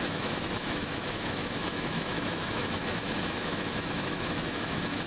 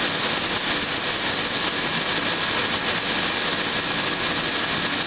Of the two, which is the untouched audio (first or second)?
second